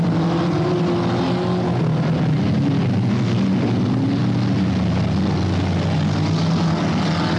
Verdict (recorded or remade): recorded